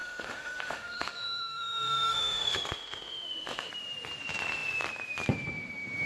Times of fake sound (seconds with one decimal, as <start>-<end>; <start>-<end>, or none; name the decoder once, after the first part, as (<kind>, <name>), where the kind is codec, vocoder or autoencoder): 0.0-3.7 (autoencoder, DAC-VAE)